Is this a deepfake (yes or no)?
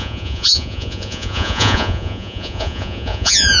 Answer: yes